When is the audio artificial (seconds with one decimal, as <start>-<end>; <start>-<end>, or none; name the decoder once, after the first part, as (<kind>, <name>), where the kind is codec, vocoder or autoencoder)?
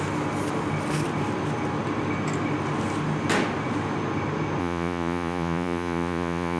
4.6-6.6 (vocoder, Vocos)